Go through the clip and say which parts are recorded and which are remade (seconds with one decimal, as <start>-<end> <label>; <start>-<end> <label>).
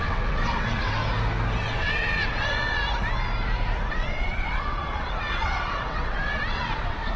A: 0.0-1.0 remade; 1.0-1.6 recorded; 1.6-2.8 remade; 2.8-3.9 recorded; 3.9-7.2 remade